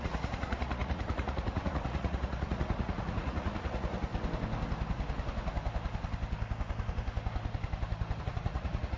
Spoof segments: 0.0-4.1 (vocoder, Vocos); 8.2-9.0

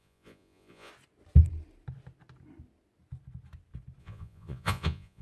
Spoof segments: 0.0-0.9 (vocoder, Vocos); 4.0-5.2

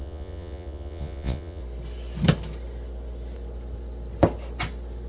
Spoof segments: 0.0-1.6 (vocoder, Vocos)